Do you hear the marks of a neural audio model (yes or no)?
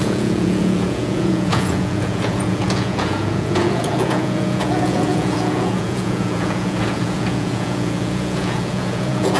yes